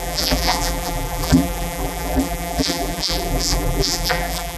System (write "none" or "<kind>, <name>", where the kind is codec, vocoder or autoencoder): vocoder, BigVGAN v2